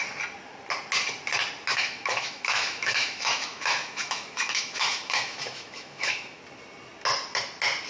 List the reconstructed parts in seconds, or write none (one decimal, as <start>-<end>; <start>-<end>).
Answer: 1.7-6.4